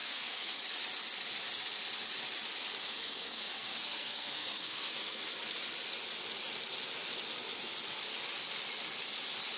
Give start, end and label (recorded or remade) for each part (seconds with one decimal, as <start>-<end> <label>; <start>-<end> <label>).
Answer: 0.0-0.6 remade; 0.6-2.8 recorded; 2.8-5.2 remade; 5.2-9.6 recorded